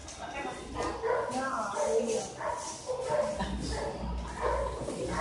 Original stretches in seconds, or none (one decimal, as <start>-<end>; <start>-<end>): 0.0-5.2